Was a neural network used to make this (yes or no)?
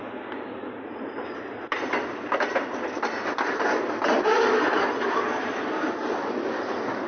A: no